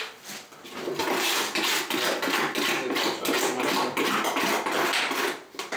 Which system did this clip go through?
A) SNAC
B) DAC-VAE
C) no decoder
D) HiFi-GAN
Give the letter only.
C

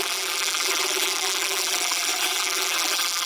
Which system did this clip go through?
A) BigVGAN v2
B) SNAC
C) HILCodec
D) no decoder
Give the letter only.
A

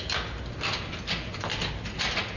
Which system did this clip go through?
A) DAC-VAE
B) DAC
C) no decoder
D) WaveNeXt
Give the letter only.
C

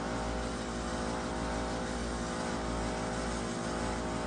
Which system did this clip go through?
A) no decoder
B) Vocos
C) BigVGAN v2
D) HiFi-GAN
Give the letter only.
A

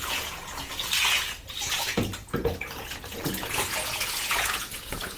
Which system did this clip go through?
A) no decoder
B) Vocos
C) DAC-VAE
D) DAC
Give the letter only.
B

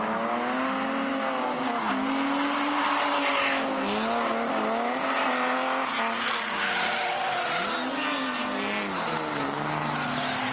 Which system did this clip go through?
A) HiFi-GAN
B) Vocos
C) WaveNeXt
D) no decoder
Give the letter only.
D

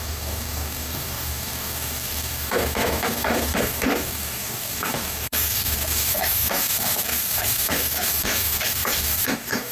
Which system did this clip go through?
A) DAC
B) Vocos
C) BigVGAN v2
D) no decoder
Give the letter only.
A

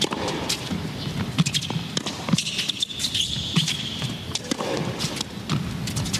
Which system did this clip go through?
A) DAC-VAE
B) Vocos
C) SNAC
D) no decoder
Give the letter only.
D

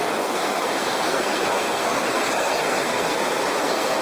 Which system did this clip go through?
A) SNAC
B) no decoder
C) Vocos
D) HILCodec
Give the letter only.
A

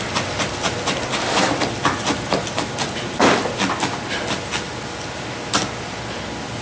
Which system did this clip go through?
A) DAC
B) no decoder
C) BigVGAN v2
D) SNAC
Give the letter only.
B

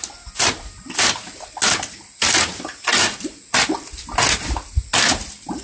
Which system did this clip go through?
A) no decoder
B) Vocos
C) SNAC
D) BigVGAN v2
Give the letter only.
A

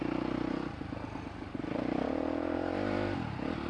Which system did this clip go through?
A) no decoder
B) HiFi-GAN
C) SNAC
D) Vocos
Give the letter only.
A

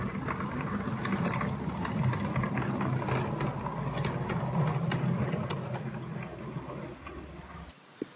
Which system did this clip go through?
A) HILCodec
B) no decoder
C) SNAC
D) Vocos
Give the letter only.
B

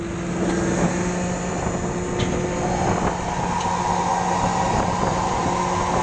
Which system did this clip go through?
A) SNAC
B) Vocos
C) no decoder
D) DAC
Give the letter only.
C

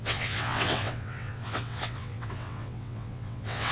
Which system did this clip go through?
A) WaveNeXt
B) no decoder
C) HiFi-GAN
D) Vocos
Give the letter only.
A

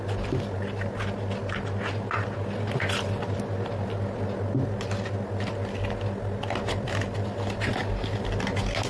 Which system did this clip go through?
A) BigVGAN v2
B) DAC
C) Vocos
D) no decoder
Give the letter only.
D